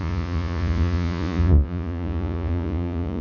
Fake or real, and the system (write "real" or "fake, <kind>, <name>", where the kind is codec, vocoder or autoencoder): fake, vocoder, Vocos